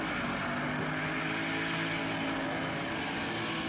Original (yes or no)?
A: yes